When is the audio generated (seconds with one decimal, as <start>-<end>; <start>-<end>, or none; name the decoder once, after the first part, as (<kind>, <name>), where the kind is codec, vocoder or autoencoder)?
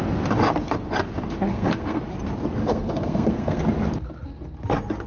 1.5-2.0 (codec, SNAC); 2.6-3.6